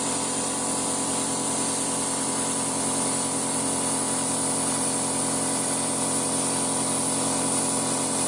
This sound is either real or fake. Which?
real